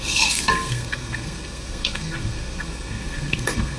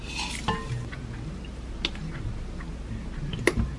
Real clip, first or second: second